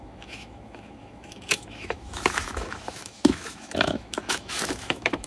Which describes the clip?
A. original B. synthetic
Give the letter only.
B